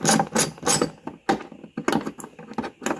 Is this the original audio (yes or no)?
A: yes